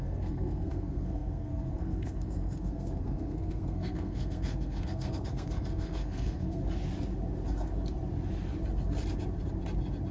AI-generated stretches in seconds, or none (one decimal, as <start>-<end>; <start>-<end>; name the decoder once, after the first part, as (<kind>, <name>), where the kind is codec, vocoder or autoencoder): 0.0-6.6 (codec, SNAC)

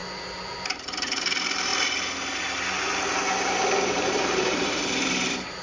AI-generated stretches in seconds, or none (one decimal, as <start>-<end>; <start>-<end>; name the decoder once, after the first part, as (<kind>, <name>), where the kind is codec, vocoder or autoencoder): 0.8-1.7 (vocoder, BigVGAN v2); 3.9-5.6

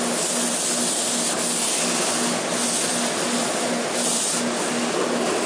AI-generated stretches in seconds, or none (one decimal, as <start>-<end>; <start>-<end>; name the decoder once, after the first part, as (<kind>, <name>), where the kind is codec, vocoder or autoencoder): none

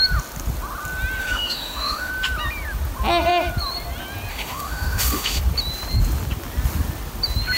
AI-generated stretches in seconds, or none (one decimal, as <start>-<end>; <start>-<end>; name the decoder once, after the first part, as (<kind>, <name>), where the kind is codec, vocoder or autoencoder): 1.2-2.1 (autoencoder, DAC-VAE); 4.3-5.4